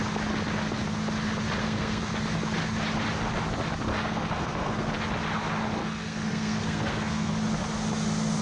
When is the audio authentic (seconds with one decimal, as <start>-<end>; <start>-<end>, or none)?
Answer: 0.0-1.6; 2.1-3.9; 4.9-5.8; 7.3-8.4